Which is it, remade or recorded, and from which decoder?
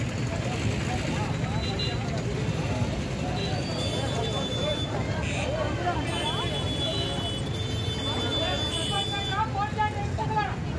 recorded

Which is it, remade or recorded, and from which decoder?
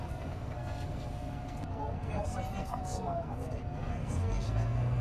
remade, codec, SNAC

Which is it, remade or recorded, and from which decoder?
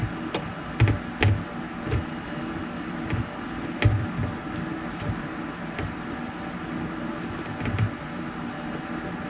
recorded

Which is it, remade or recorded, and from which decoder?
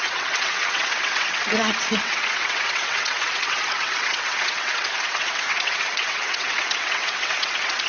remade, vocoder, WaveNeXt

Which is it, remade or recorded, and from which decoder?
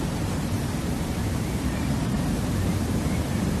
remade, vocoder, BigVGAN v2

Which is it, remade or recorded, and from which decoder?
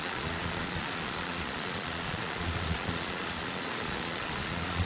remade, vocoder, Vocos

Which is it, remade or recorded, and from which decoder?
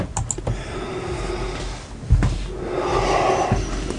recorded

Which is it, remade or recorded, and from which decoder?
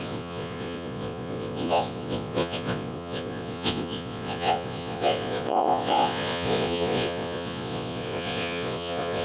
remade, vocoder, Vocos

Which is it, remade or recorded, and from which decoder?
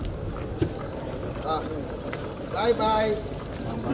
recorded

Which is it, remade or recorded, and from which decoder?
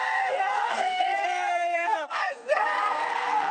remade, codec, SNAC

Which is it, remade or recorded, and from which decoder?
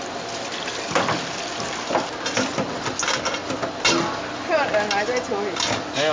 recorded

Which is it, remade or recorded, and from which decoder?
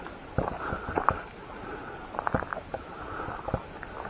recorded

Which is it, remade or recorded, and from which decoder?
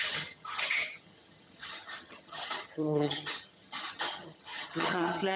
remade, vocoder, HiFi-GAN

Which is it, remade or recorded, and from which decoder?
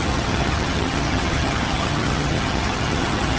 remade, vocoder, HiFi-GAN